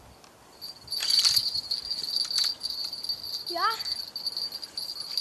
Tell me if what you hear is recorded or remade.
recorded